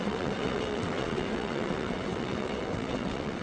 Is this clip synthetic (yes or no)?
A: yes